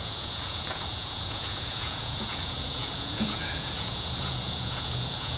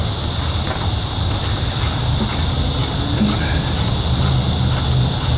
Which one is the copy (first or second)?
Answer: first